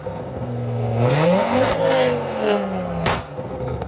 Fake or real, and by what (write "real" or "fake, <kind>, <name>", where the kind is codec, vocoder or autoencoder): fake, codec, SNAC